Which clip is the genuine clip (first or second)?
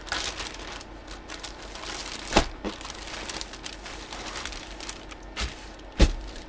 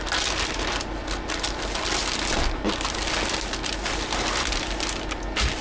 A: second